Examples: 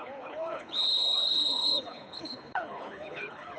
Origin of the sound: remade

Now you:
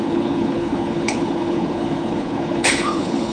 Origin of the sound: remade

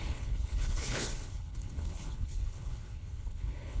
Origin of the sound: remade